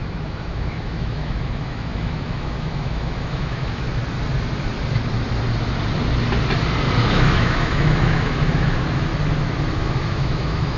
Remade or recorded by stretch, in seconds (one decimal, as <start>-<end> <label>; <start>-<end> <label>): 0.0-4.0 remade; 4.0-7.0 recorded; 7.0-9.1 remade; 9.1-9.7 recorded; 9.7-10.8 remade